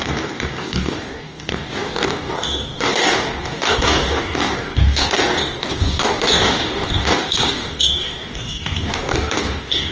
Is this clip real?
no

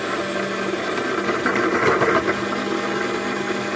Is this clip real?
yes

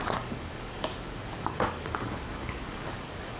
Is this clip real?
no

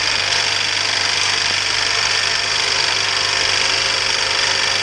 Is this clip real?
yes